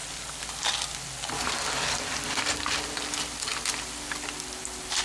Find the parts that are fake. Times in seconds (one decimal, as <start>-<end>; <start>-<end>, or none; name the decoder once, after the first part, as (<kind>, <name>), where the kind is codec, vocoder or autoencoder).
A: none